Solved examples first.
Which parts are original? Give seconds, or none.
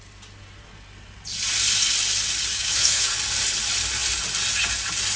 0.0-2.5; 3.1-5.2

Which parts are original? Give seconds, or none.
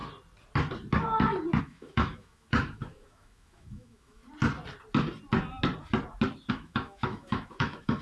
0.0-1.6; 4.2-6.5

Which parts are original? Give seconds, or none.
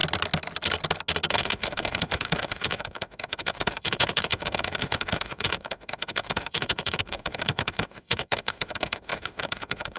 0.0-1.3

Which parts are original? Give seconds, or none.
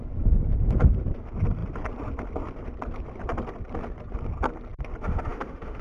0.0-5.0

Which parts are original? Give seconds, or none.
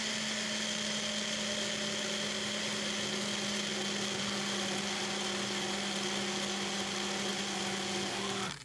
0.0-8.6